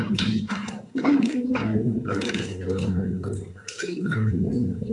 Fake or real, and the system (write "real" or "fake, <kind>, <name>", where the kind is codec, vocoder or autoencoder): fake, codec, SNAC